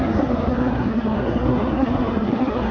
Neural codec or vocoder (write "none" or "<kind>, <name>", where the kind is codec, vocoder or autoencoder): codec, SNAC